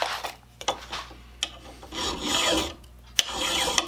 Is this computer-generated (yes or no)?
no